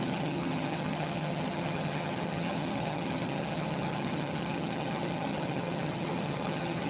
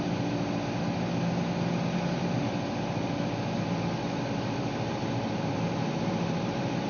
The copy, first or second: first